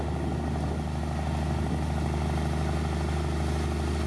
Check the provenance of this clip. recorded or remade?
recorded